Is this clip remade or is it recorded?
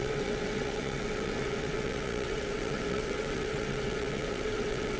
remade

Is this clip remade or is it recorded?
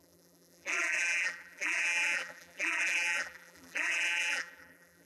remade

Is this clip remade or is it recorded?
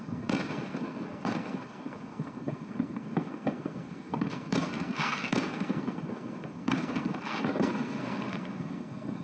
remade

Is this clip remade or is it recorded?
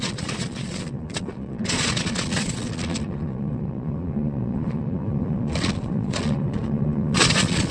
remade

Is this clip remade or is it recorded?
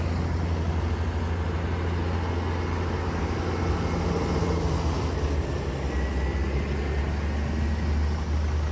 recorded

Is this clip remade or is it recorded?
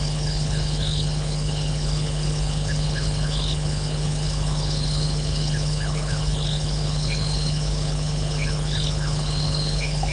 remade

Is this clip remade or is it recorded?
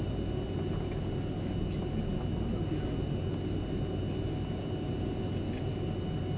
recorded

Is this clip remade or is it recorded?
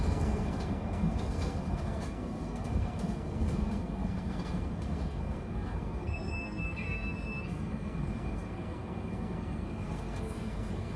remade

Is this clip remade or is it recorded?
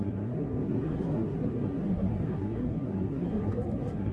remade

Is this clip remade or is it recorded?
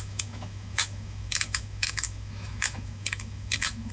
remade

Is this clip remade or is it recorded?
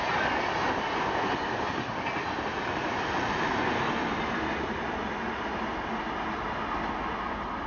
recorded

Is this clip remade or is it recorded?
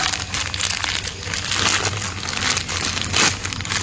recorded